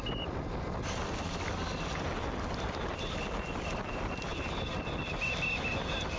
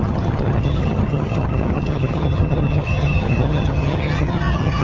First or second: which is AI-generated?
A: second